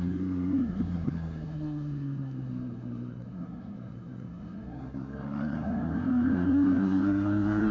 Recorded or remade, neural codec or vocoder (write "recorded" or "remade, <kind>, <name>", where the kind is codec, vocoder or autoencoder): remade, codec, SNAC